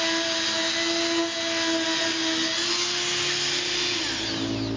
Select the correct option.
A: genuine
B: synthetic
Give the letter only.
A